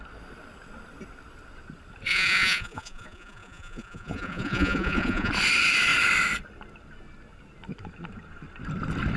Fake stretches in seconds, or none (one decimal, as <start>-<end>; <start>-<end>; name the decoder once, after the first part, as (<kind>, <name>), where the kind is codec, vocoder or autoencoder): 2.1-5.3 (vocoder, Vocos)